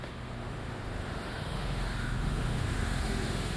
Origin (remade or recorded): remade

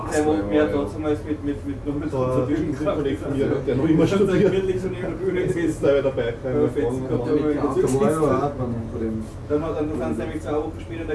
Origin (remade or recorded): recorded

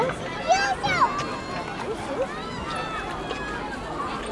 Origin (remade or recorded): recorded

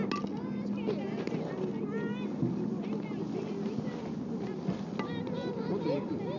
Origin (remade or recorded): recorded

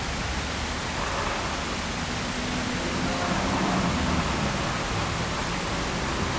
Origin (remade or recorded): recorded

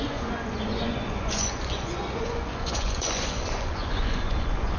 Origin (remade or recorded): remade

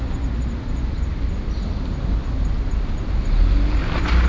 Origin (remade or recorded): recorded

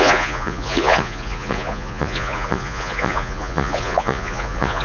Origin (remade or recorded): remade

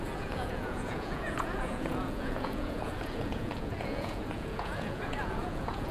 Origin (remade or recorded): remade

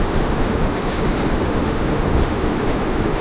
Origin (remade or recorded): remade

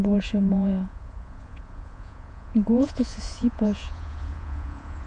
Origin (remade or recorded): remade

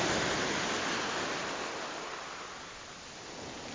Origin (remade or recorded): recorded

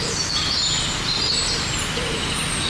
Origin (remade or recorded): recorded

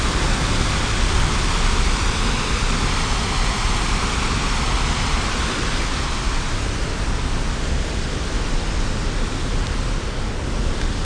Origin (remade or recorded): recorded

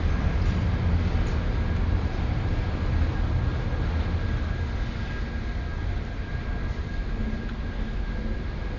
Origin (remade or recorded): recorded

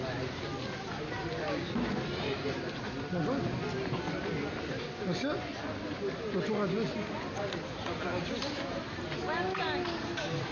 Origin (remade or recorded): recorded